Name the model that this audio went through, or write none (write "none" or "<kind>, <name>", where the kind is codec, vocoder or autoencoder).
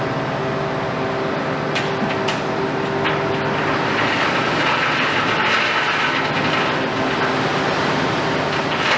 none